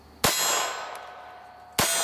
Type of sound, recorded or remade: recorded